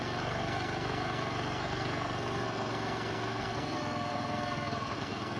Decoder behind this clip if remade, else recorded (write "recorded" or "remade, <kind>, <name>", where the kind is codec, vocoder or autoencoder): remade, codec, SNAC